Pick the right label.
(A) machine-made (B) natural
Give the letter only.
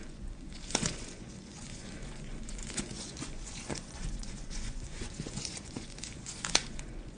A